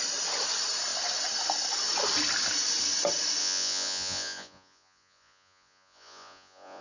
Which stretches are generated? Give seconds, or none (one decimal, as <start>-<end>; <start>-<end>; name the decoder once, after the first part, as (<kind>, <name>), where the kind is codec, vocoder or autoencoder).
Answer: 3.4-6.8 (vocoder, Vocos)